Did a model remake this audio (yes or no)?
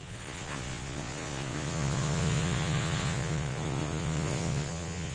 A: yes